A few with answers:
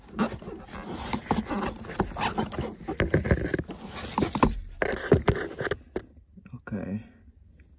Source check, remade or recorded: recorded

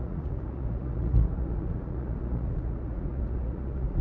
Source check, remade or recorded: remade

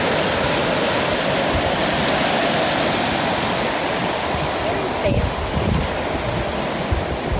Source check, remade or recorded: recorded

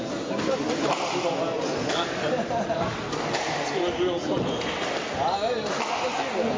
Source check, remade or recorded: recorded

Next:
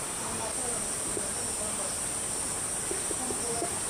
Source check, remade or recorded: recorded